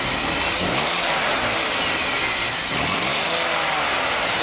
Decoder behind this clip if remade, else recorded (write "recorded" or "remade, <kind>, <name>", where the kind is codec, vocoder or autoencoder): recorded